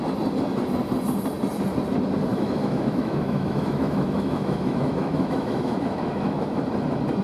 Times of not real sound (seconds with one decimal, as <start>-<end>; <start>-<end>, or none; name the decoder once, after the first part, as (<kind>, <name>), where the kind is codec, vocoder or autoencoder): 2.3-6.6 (autoencoder, DAC-VAE)